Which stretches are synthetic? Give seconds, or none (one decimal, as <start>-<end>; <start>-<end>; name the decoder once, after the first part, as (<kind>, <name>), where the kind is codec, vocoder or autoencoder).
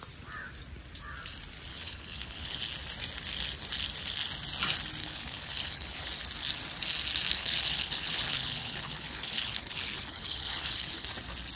1.7-2.6 (codec, HILCodec); 5.0-6.1; 7.4-11.1